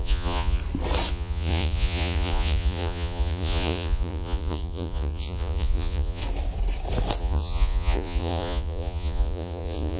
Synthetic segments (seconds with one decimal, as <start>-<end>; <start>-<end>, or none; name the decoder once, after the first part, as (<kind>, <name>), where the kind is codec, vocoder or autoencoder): 0.0-0.6 (vocoder, Vocos); 1.1-6.2; 7.2-10.0